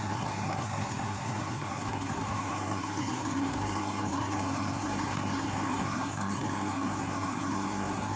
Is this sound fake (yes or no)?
yes